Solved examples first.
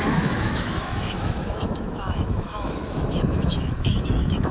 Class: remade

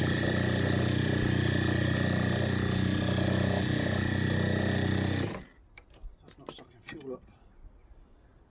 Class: recorded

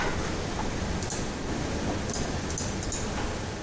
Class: recorded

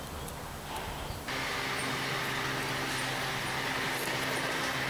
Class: recorded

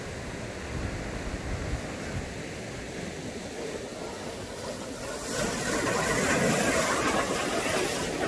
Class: recorded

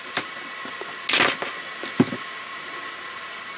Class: recorded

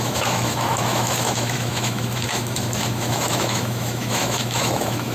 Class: remade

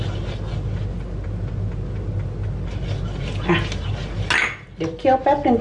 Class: recorded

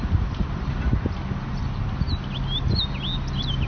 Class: recorded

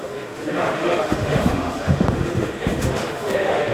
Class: remade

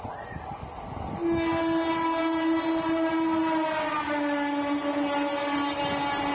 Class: recorded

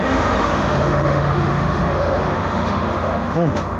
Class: remade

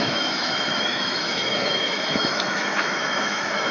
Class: remade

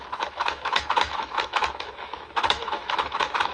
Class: remade